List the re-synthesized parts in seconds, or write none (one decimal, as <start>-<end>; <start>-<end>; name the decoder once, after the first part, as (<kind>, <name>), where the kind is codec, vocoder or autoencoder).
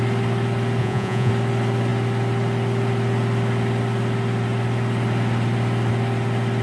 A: 0.8-1.3 (vocoder, Vocos)